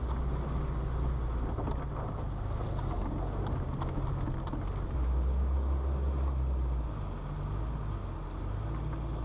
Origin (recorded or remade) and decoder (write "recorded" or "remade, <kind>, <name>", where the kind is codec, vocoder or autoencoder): recorded